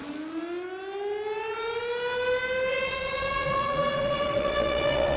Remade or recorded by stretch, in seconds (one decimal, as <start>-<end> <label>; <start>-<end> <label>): 0.0-2.7 recorded; 2.7-5.2 remade